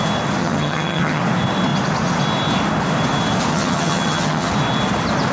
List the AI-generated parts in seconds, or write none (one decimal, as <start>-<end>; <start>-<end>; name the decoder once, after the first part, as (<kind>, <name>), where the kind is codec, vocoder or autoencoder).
0.4-1.2 (vocoder, HiFi-GAN); 3.5-4.5